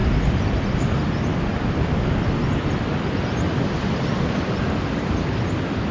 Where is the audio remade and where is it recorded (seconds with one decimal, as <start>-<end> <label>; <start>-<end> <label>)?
0.0-5.9 recorded